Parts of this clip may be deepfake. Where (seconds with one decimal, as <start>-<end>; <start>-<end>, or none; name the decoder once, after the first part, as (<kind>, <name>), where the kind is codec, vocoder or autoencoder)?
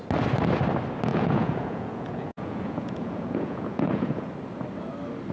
1.1-4.3 (vocoder, Vocos)